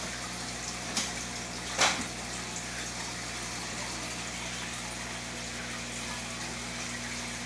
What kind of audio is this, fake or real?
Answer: real